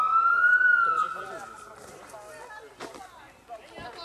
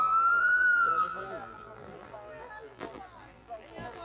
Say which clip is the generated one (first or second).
second